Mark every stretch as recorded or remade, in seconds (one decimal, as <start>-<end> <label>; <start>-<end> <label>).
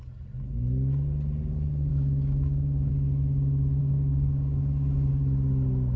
0.0-1.9 recorded; 1.9-2.9 remade; 2.9-3.8 recorded; 3.8-5.1 remade; 5.1-6.0 recorded